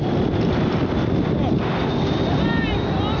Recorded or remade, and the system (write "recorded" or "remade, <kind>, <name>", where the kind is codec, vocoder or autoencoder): recorded